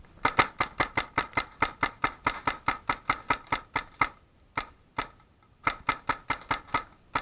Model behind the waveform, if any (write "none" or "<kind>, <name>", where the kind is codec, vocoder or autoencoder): none